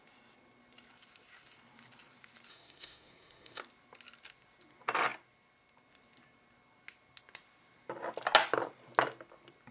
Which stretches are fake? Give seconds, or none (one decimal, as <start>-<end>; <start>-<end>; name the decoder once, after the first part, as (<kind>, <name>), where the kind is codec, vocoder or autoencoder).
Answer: 2.5-3.6 (codec, SNAC)

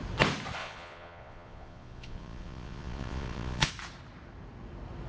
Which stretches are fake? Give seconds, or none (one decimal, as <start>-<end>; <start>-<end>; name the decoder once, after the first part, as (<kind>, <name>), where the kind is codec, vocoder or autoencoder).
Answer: 0.6-3.7 (vocoder, Vocos)

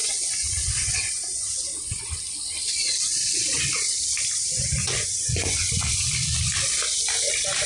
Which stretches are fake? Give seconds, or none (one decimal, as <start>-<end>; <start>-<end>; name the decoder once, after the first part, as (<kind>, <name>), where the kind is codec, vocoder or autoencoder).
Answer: 0.0-1.5 (vocoder, Vocos); 4.8-5.7

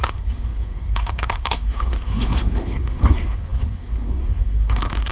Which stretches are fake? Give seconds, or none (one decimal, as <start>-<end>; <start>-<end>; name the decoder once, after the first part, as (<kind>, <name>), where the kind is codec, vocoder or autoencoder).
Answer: 0.0-5.1 (codec, SNAC)

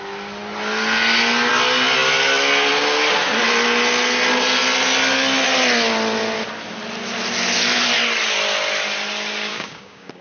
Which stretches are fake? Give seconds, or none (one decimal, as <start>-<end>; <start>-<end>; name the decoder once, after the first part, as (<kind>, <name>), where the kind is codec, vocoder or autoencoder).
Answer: 9.5-10.2 (codec, DAC)